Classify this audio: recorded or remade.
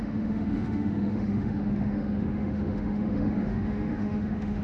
remade